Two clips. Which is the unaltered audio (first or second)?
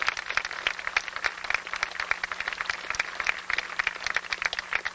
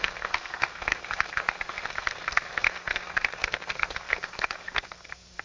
first